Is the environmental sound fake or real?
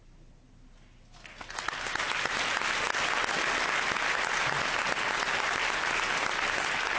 real